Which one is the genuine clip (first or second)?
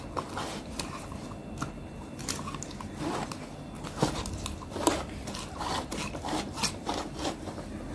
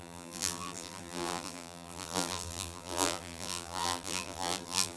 first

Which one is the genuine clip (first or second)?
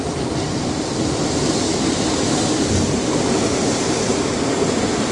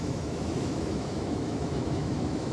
first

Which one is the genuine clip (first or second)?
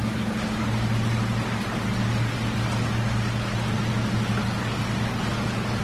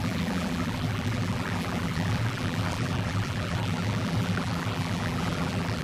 first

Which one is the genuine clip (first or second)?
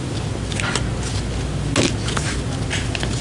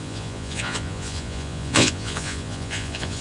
first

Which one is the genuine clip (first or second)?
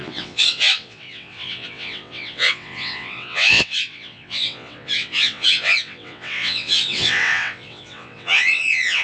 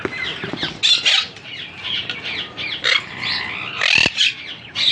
second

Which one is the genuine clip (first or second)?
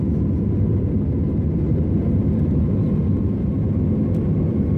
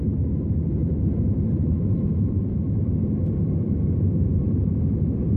first